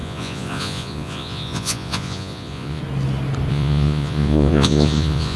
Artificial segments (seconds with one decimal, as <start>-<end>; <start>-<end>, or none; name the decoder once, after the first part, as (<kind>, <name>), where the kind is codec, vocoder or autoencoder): 0.0-2.8 (vocoder, Vocos); 3.5-5.4